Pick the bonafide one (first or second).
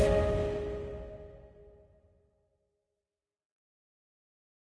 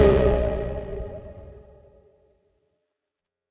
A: first